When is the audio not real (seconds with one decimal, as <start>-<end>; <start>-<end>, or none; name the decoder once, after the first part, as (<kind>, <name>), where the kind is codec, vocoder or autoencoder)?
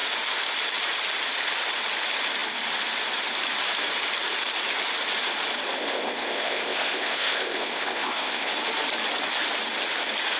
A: 5.8-8.5 (codec, ZipCodec)